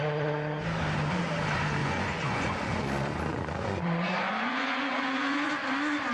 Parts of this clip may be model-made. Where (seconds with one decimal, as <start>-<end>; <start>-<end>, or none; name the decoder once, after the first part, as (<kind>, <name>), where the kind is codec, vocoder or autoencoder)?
1.8-5.5 (vocoder, Vocos)